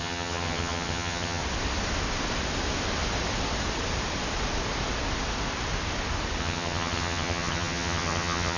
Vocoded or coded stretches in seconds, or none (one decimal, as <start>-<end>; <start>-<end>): 0.0-1.4; 6.4-8.6